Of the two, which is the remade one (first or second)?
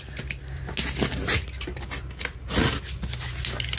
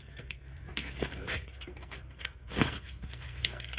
second